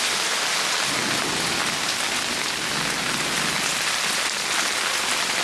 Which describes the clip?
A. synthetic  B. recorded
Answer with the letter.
B